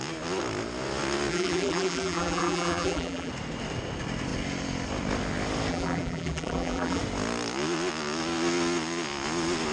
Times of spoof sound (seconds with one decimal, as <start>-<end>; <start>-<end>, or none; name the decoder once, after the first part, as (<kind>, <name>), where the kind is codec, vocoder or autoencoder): 1.3-3.3 (vocoder, BigVGAN v2); 5.7-7.0